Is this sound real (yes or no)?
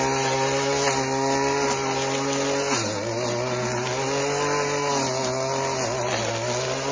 yes